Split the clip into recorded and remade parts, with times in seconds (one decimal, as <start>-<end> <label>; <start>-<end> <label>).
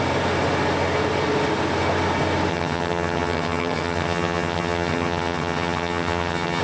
0.0-2.5 recorded; 2.5-6.6 remade